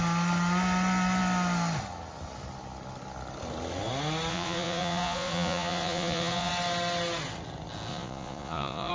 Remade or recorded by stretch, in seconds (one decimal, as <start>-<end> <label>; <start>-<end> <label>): 0.0-4.3 recorded; 4.3-6.5 remade; 6.5-7.9 recorded; 7.9-8.9 remade

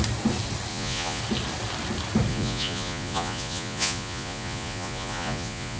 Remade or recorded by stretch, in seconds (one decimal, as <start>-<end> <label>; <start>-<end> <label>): 0.0-0.7 recorded; 0.7-1.2 remade; 1.2-2.3 recorded; 2.3-5.8 remade

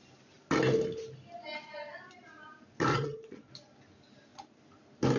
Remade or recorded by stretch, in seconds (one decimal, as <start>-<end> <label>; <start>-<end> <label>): 0.0-2.9 recorded; 2.9-3.5 remade; 3.5-5.2 recorded

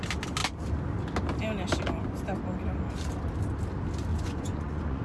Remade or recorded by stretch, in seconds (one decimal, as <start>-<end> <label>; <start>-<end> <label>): 0.0-4.1 recorded; 4.1-5.0 remade

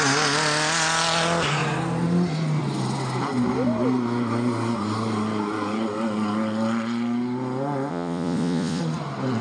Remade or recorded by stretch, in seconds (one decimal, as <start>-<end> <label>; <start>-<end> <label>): 0.0-7.9 recorded; 7.9-8.8 remade; 8.8-9.4 recorded

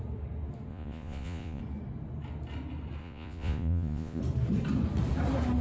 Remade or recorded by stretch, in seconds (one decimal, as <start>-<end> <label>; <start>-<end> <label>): 0.0-0.7 recorded; 0.7-1.6 remade; 1.6-3.0 recorded; 3.0-4.2 remade; 4.2-5.6 recorded